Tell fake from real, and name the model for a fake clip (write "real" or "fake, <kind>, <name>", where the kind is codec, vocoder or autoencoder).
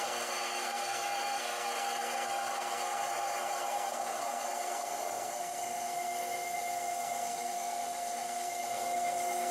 fake, codec, SNAC